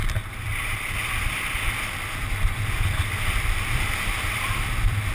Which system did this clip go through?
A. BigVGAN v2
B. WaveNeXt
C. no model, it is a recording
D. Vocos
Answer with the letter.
A